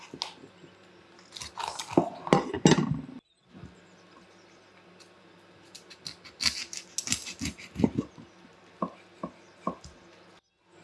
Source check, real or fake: real